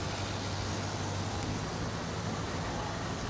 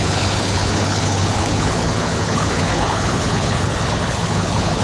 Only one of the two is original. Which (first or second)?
first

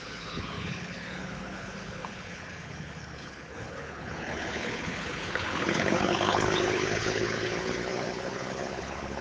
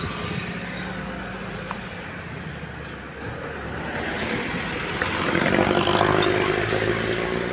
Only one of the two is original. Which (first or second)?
second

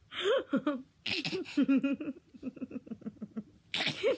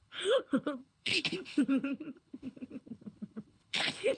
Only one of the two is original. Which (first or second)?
first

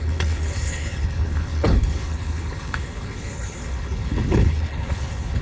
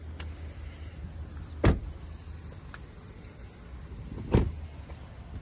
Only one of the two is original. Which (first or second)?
second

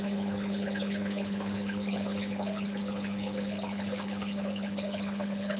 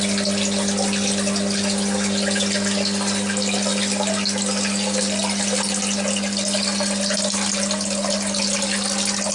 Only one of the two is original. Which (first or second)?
second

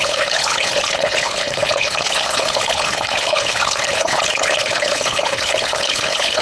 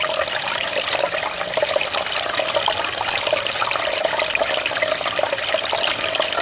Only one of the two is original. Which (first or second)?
second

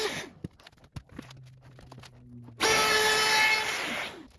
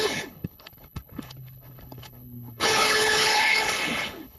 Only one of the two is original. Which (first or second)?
first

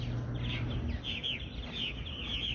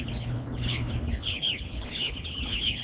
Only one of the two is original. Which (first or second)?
first